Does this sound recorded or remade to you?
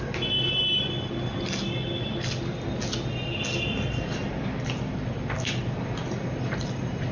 recorded